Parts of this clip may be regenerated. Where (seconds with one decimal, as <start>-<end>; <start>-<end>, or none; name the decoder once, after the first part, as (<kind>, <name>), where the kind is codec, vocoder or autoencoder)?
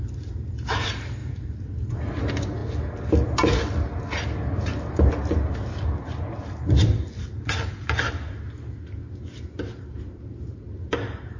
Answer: 0.0-2.6 (vocoder, BigVGAN v2); 3.3-5.7; 9.7-11.4